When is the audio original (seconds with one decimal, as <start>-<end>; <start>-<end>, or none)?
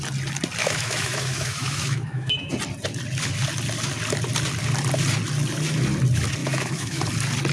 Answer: 0.0-0.6; 2.5-6.4; 7.0-7.5